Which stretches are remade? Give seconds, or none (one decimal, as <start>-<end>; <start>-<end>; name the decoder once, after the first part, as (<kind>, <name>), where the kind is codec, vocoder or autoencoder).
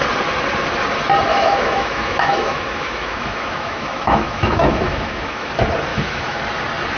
1.3-5.5 (autoencoder, DAC-VAE); 5.9-6.4